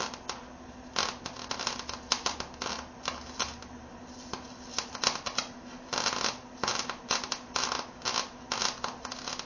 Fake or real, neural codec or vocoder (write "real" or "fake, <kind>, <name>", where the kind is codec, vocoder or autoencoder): real